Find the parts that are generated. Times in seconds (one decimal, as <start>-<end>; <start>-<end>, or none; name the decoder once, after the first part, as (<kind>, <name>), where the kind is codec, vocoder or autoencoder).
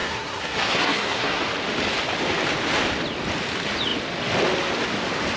0.0-1.4 (codec, SNAC)